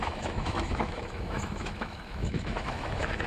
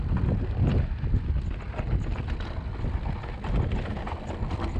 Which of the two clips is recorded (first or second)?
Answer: second